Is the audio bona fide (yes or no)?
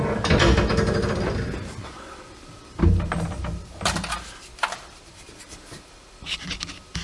yes